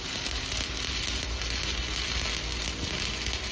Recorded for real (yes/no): yes